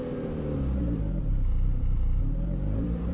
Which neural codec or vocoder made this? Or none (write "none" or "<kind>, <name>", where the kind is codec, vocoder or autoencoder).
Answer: vocoder, BigVGAN v2